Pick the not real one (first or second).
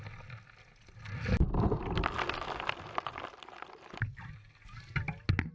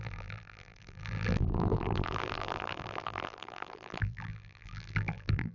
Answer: second